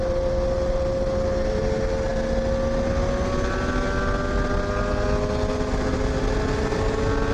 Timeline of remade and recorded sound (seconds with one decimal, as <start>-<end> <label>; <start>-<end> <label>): 0.0-7.3 recorded